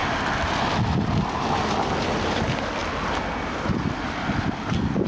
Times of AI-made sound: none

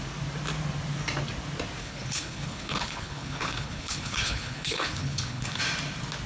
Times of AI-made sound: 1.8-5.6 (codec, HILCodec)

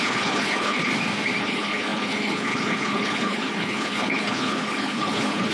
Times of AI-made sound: 0.0-0.9 (codec, HILCodec); 1.4-5.5

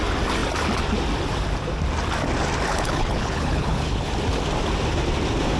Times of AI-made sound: 2.7-4.1 (codec, HILCodec)

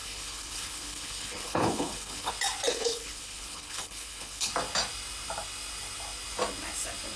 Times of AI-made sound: 0.0-2.3 (codec, HILCodec); 2.7-4.5